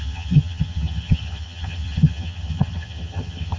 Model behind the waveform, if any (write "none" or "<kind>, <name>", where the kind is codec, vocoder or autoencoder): vocoder, HiFi-GAN